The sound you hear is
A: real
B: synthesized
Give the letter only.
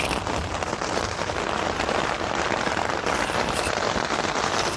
A